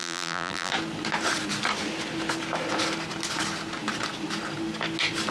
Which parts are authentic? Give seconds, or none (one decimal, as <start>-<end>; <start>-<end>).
0.7-5.3